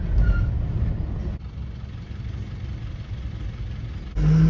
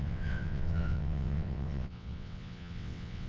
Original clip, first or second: first